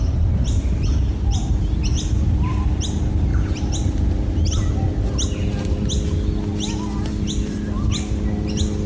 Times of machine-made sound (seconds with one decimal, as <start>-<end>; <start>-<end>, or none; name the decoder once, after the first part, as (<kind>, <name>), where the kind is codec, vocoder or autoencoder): none